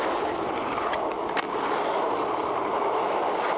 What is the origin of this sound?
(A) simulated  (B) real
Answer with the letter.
B